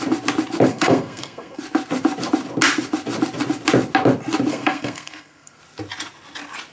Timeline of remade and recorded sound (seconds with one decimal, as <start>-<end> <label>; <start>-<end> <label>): 0.0-0.7 recorded; 0.7-1.6 remade; 1.6-4.5 recorded; 4.5-5.6 remade; 5.6-6.7 recorded